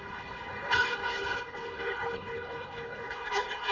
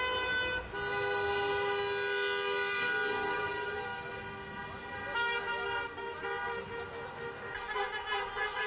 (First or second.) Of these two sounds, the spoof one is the first